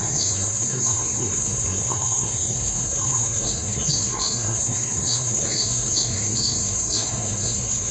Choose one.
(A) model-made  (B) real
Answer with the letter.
A